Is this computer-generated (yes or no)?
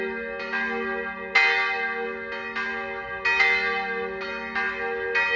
no